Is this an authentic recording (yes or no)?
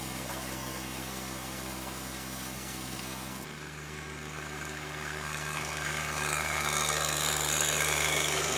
no